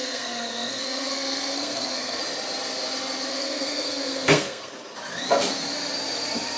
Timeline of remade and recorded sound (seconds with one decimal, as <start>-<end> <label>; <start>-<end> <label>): 0.0-2.2 remade; 2.2-3.3 recorded; 3.3-4.7 remade; 4.7-6.6 recorded